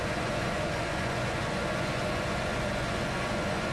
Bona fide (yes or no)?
no